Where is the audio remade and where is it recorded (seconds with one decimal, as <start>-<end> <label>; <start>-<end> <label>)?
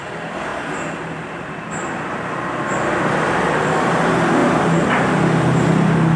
0.0-0.5 recorded; 0.5-1.5 remade; 1.5-2.9 recorded; 2.9-3.9 remade; 3.9-4.4 recorded; 4.4-5.0 remade; 5.0-6.2 recorded